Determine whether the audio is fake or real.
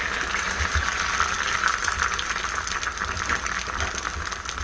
real